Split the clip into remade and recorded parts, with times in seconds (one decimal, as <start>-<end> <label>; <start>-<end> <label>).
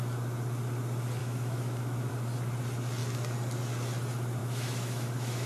0.0-1.2 recorded; 1.2-2.1 remade; 2.1-4.4 recorded; 4.4-5.5 remade